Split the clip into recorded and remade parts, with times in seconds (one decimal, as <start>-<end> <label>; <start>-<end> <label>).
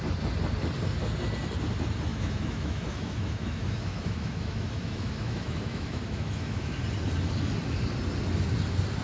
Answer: 0.0-2.1 recorded; 2.1-6.8 remade; 6.8-9.0 recorded